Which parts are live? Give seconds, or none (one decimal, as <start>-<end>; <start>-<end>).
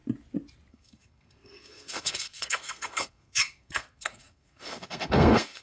0.0-0.7